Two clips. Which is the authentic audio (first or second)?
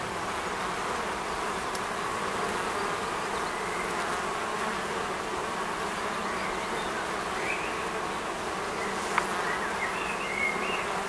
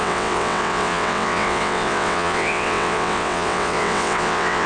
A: first